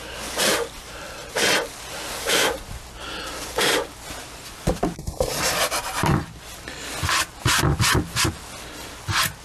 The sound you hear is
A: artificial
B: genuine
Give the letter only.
B